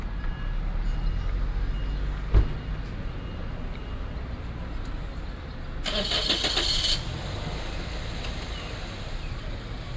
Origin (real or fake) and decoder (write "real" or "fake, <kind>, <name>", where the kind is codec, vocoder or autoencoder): real